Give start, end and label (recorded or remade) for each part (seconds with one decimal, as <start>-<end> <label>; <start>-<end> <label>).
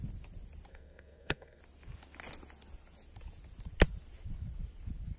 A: 0.0-0.7 recorded; 0.7-1.6 remade; 1.6-5.2 recorded